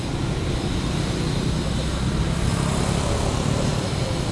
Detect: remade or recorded remade